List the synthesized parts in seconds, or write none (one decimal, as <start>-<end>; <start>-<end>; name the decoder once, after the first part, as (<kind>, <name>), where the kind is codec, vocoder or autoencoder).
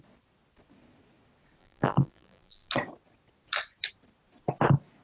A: 1.6-2.7 (vocoder, BigVGAN v2)